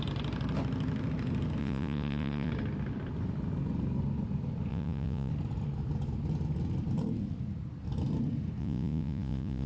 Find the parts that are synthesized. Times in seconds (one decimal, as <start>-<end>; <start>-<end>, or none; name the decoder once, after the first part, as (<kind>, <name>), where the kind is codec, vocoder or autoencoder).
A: 1.6-2.5 (vocoder, Vocos); 4.7-5.3; 8.6-9.7